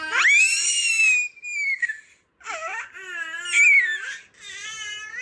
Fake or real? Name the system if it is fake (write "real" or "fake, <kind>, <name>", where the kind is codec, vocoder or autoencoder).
real